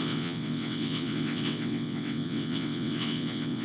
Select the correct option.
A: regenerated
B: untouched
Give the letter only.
A